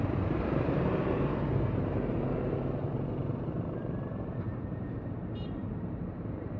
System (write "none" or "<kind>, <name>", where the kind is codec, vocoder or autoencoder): vocoder, BigVGAN v2